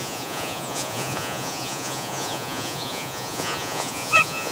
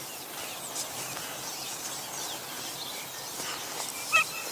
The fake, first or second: first